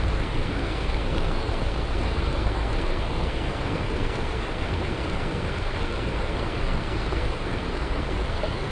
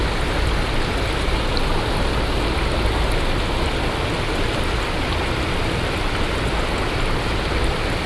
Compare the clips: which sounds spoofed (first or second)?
first